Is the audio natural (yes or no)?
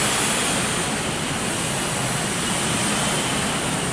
yes